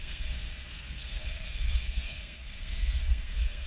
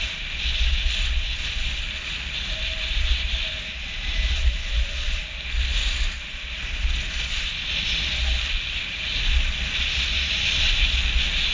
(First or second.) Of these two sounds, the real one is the second